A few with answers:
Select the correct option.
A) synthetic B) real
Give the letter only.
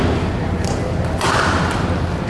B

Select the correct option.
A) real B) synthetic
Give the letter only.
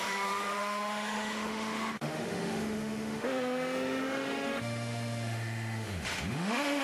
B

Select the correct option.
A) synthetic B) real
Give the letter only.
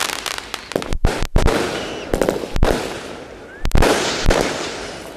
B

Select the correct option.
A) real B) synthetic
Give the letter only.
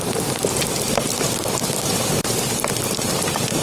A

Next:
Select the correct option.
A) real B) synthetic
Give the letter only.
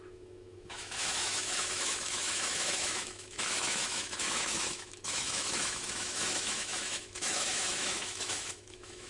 B